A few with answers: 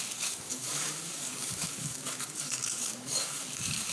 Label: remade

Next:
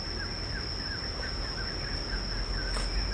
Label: recorded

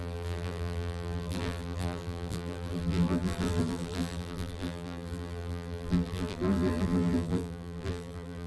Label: remade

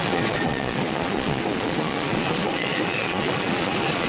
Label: remade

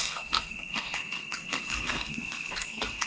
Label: remade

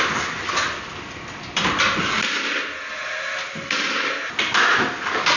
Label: recorded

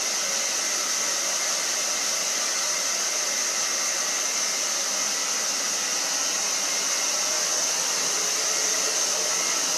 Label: recorded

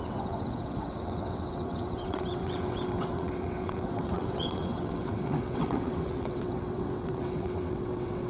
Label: remade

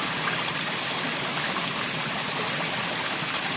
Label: recorded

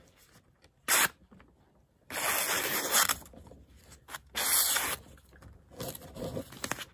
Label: recorded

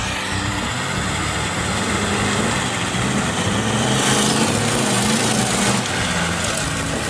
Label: recorded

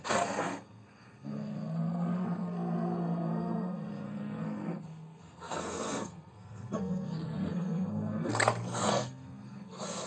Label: remade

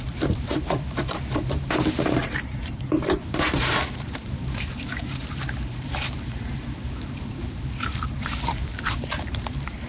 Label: remade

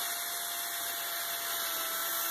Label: recorded